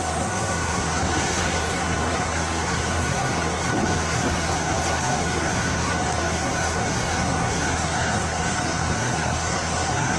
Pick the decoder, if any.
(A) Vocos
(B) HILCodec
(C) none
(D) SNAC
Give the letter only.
D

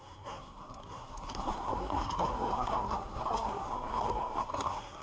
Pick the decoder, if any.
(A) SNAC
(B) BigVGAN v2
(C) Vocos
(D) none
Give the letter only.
A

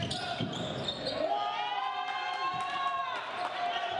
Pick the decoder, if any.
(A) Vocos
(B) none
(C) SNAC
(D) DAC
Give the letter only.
B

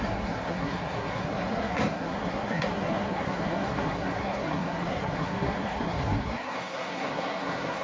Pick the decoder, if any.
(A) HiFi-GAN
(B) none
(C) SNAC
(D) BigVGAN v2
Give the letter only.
C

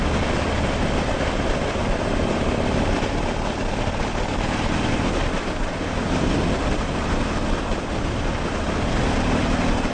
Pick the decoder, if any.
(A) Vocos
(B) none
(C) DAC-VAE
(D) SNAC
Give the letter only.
B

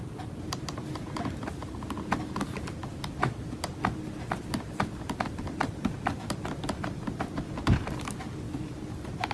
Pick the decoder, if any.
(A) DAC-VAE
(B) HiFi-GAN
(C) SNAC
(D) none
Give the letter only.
D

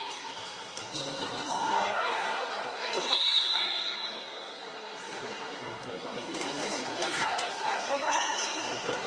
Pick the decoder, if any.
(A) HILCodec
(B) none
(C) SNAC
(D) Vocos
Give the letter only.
C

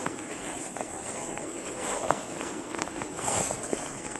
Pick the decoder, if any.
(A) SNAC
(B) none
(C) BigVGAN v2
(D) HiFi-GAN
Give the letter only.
A